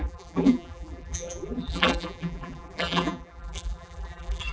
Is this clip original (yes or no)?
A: no